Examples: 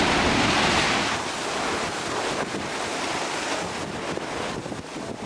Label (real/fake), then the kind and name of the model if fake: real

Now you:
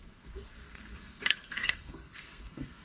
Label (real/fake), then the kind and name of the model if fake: fake, codec, SNAC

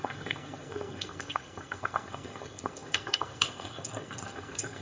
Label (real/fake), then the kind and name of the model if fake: fake, codec, SNAC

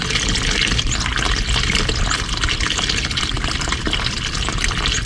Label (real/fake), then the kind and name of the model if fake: real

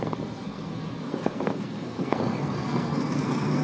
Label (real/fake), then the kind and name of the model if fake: fake, codec, SNAC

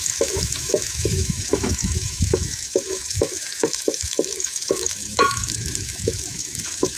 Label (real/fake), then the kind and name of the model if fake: fake, autoencoder, DAC-VAE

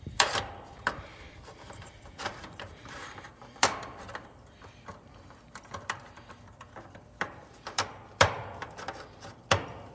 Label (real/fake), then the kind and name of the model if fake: fake, vocoder, BigVGAN v2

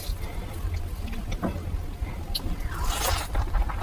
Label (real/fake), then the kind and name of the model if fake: real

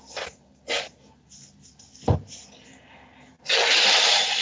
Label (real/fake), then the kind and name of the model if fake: real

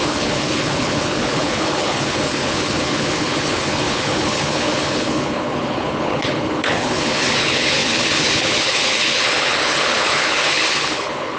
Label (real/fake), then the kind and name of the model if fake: fake, codec, HILCodec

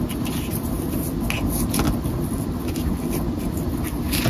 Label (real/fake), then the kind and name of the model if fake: real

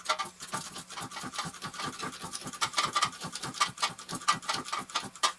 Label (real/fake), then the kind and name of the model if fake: real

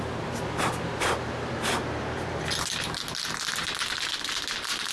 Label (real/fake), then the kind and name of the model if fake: fake, vocoder, BigVGAN v2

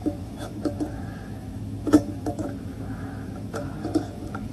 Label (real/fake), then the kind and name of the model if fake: fake, autoencoder, DAC-VAE